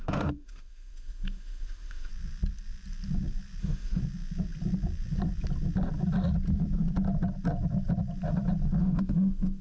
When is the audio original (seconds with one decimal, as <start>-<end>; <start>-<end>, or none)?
2.1-3.6; 4.0-8.8